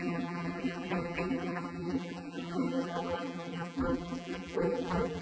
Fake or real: fake